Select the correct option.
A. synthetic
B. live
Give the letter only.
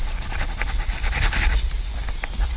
B